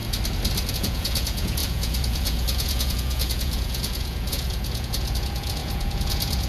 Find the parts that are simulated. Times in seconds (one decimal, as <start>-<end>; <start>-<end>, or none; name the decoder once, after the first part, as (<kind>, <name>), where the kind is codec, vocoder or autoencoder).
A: 0.7-6.5 (vocoder, Vocos)